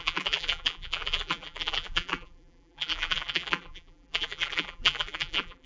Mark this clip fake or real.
fake